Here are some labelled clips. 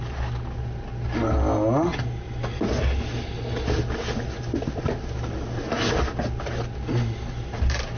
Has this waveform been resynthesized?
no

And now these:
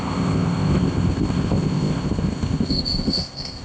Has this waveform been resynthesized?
yes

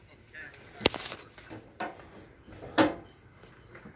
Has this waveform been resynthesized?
no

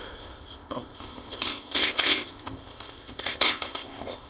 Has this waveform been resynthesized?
yes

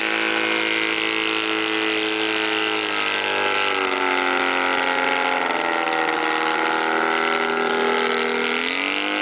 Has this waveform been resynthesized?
no